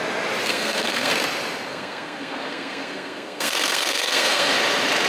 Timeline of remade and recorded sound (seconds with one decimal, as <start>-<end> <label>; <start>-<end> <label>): 0.0-0.5 recorded; 0.5-1.1 remade; 1.1-1.7 recorded; 1.7-4.5 remade; 4.5-5.1 recorded